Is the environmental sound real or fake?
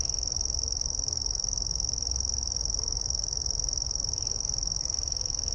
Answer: fake